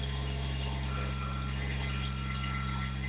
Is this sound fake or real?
real